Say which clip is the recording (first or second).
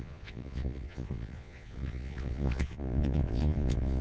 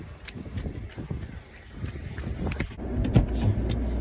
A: second